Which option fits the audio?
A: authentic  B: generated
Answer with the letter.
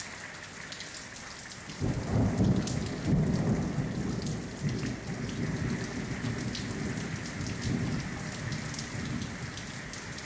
A